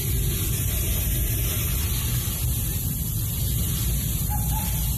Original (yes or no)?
no